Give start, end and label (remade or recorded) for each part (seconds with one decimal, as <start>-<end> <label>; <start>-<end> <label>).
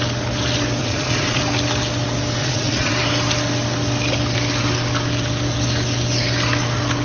0.0-0.8 recorded; 0.8-1.4 remade; 1.4-2.4 recorded; 2.4-2.9 remade; 2.9-7.0 recorded